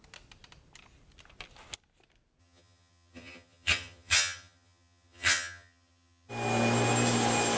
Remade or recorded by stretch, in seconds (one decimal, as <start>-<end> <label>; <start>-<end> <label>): 0.0-2.4 recorded; 2.4-6.3 remade; 6.3-7.6 recorded